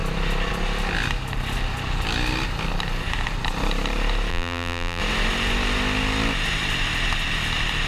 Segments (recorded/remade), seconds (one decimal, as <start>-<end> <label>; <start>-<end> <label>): 0.0-4.3 recorded; 4.3-5.0 remade; 5.0-7.9 recorded